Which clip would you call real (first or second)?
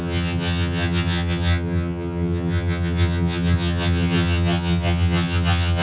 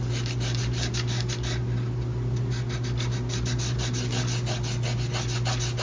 second